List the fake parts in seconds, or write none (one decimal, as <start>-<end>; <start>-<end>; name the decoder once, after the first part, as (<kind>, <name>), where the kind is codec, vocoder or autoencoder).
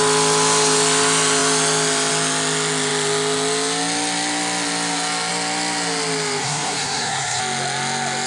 6.4-7.4 (codec, SNAC)